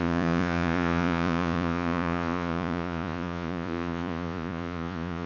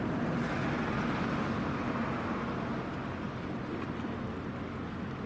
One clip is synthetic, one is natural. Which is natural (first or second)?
second